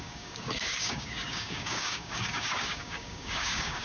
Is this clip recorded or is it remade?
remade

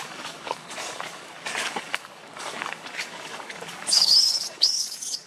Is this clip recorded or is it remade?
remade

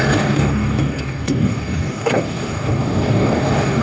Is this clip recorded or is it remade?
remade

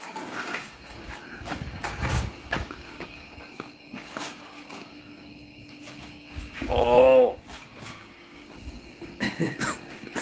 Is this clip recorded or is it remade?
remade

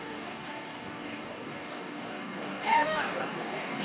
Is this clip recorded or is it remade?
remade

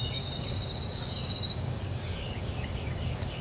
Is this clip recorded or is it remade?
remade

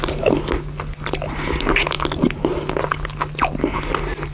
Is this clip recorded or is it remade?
recorded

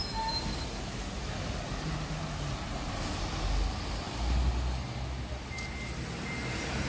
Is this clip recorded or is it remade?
recorded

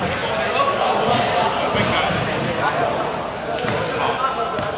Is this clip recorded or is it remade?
recorded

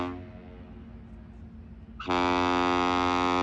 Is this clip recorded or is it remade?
recorded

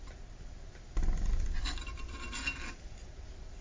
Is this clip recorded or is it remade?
recorded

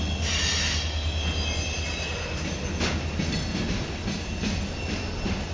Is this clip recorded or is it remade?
recorded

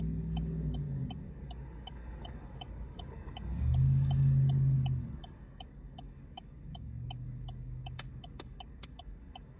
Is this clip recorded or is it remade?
remade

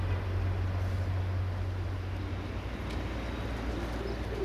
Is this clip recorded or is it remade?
recorded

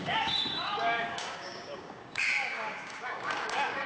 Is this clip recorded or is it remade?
remade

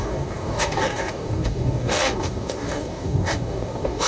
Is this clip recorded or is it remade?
remade